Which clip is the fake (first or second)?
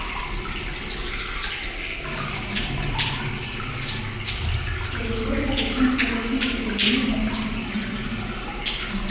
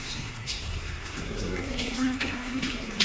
second